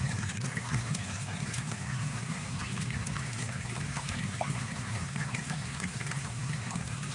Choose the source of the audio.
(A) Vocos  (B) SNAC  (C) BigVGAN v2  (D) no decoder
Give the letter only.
B